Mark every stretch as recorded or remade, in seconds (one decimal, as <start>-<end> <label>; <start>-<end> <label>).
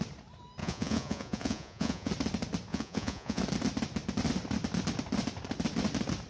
0.0-0.6 recorded; 0.6-2.1 remade; 2.1-2.7 recorded; 2.7-3.4 remade; 3.4-6.3 recorded